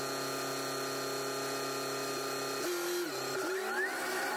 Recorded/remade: recorded